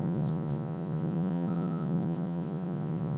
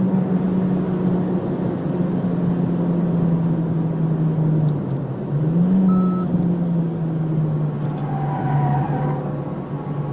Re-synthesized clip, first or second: first